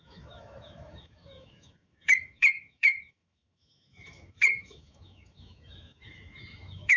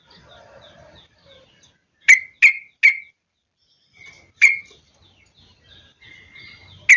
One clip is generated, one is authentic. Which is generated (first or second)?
first